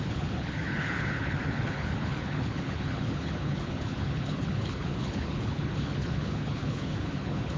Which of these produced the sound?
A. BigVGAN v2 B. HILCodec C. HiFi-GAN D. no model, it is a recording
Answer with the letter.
B